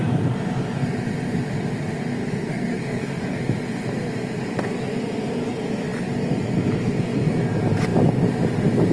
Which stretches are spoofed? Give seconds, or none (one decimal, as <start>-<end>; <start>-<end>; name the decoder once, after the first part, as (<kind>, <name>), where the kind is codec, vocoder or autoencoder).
2.2-3.4 (codec, SNAC)